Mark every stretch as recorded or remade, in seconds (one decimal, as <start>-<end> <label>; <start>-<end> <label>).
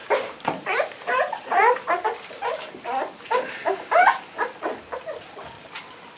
0.0-1.9 remade; 1.9-3.6 recorded; 3.6-4.7 remade; 4.7-6.2 recorded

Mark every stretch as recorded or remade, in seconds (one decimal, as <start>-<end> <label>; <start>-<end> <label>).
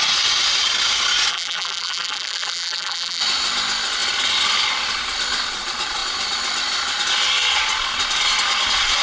0.0-1.3 recorded; 1.3-3.2 remade; 3.2-9.0 recorded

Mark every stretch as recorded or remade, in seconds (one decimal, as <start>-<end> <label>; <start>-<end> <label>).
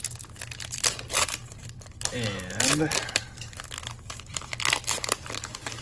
0.0-1.4 recorded; 1.4-2.1 remade; 2.1-2.9 recorded; 2.9-4.5 remade; 4.5-5.8 recorded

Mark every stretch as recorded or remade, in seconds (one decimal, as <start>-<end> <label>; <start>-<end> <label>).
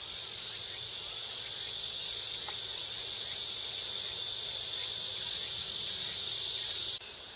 0.0-2.8 remade; 2.8-7.4 recorded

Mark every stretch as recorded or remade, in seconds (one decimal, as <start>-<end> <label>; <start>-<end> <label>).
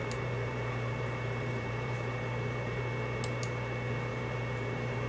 0.0-2.8 remade; 2.8-4.1 recorded; 4.1-5.1 remade